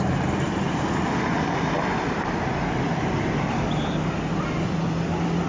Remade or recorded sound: recorded